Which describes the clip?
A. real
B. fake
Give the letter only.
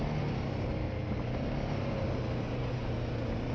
A